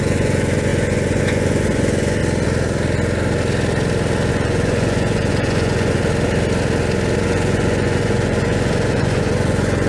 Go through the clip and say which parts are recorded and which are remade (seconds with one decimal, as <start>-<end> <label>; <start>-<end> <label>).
0.0-2.2 remade; 2.2-4.3 recorded; 4.3-6.0 remade; 6.0-7.2 recorded; 7.2-9.9 remade